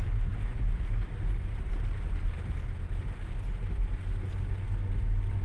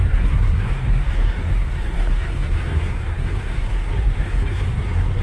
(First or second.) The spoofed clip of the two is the second